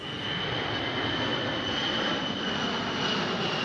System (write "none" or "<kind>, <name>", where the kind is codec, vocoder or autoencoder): none